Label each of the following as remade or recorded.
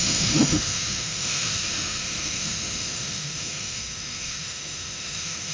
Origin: remade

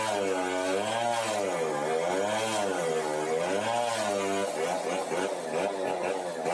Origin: recorded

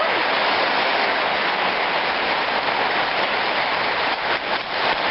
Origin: recorded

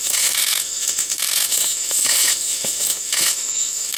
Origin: remade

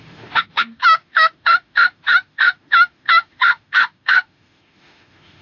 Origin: remade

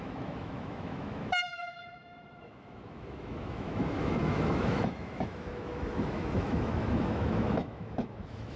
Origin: remade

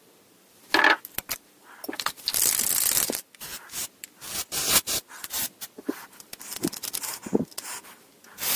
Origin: recorded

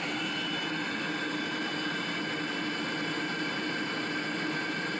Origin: recorded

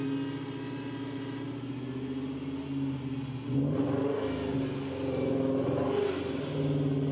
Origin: recorded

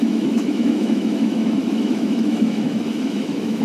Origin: remade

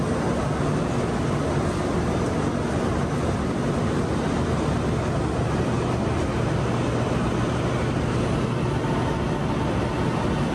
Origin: recorded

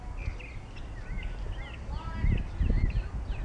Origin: recorded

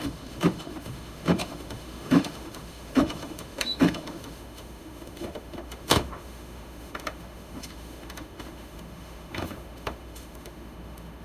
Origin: remade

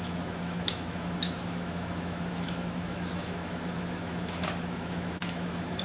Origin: remade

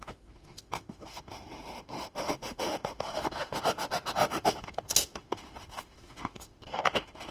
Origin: remade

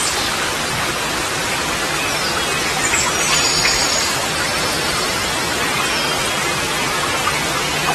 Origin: recorded